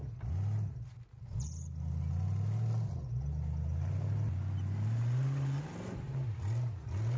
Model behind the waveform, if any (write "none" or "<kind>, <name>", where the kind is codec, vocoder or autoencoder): none